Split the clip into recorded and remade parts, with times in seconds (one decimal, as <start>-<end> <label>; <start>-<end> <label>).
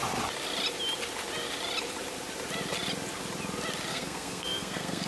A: 0.0-3.9 recorded; 3.9-5.1 remade